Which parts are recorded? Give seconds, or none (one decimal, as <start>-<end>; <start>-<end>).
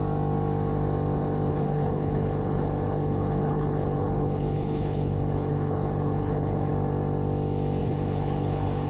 0.0-1.5; 6.7-7.8